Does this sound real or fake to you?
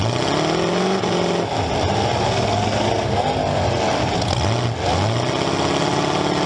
real